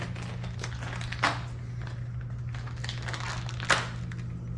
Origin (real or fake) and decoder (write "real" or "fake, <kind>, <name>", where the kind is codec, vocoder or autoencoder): real